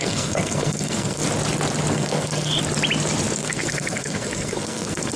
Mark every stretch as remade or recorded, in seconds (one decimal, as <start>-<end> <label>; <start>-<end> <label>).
0.0-1.2 remade; 1.2-1.9 recorded; 1.9-2.5 remade; 2.5-3.4 recorded; 3.4-5.2 remade

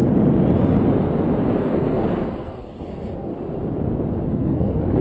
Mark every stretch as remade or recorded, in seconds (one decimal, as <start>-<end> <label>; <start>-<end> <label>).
0.0-1.6 recorded; 1.6-3.3 remade; 3.3-4.3 recorded; 4.3-5.0 remade

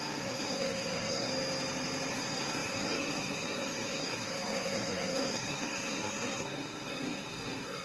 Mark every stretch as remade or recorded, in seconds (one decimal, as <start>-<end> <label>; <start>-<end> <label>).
0.0-1.3 remade; 1.3-2.1 recorded; 2.1-7.8 remade

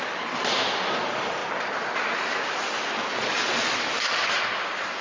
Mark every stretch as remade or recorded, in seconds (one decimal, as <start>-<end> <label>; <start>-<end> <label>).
0.0-5.0 recorded

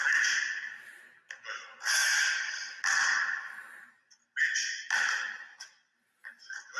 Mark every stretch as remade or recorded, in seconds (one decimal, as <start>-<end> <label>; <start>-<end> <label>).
0.0-6.8 recorded

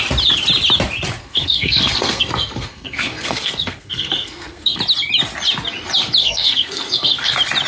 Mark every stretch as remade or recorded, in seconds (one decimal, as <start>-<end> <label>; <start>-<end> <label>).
0.0-1.2 recorded; 1.2-4.8 remade; 4.8-6.2 recorded; 6.2-7.3 remade; 7.3-7.7 recorded